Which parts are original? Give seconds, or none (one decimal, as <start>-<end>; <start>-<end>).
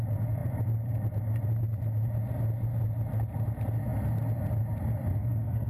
0.0-5.1